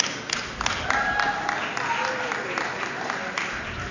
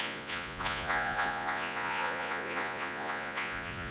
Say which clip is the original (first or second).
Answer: first